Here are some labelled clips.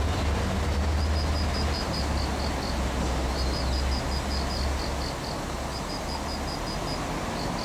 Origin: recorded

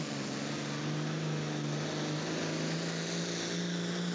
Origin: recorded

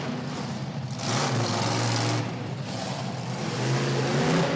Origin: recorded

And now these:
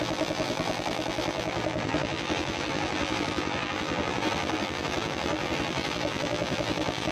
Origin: remade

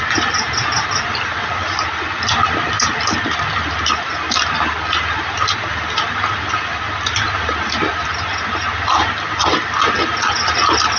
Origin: recorded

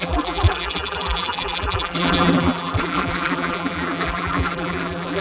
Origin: remade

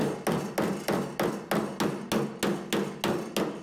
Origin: recorded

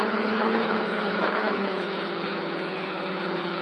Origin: remade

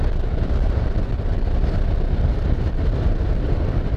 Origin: recorded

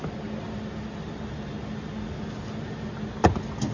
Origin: recorded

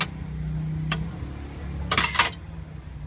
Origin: recorded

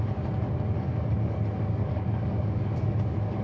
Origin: remade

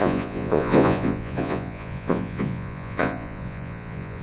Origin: remade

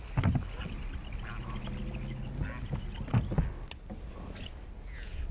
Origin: recorded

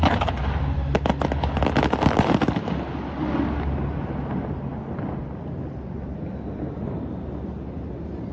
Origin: recorded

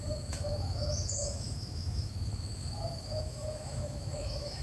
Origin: remade